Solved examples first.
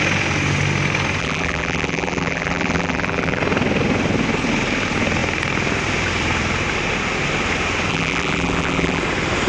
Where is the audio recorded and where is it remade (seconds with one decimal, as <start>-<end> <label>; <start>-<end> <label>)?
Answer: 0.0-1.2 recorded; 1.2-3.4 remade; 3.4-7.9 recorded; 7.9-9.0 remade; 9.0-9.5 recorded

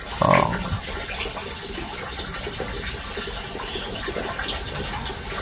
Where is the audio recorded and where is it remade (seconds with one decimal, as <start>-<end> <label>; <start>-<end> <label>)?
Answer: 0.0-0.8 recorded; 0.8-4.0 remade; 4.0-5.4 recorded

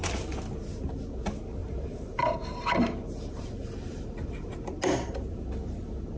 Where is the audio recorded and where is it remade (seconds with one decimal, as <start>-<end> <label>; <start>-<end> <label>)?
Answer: 0.0-1.6 recorded; 1.6-4.5 remade; 4.5-6.2 recorded

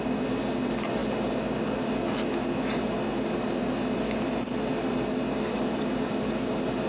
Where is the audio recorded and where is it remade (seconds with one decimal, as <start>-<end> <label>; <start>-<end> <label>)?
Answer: 0.0-6.9 recorded

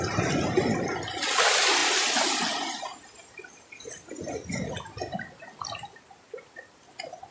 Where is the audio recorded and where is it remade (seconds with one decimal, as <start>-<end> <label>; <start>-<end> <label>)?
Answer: 0.0-7.3 recorded

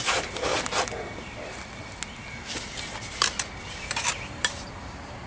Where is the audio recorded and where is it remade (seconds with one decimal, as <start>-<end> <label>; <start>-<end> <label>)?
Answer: 0.0-0.5 remade; 0.5-3.7 recorded; 3.7-5.3 remade

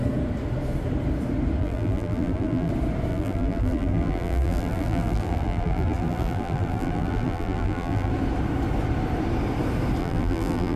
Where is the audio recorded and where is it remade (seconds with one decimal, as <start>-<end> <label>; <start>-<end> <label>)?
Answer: 0.0-1.6 recorded; 1.6-2.7 remade; 2.7-3.1 recorded; 3.1-8.1 remade; 8.1-10.0 recorded; 10.0-10.8 remade